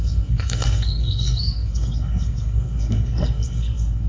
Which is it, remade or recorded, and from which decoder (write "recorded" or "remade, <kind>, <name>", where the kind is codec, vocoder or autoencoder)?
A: remade, codec, SNAC